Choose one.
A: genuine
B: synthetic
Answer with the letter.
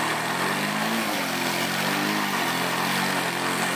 A